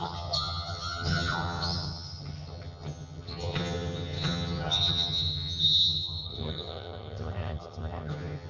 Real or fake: fake